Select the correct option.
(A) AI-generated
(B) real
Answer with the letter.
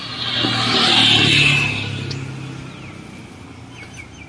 B